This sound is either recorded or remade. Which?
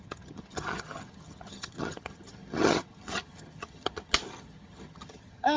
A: remade